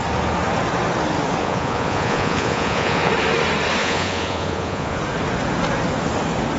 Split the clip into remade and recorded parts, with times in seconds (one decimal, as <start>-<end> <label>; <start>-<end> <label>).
0.0-1.4 recorded; 1.4-3.1 remade; 3.1-3.8 recorded; 3.8-5.0 remade; 5.0-6.6 recorded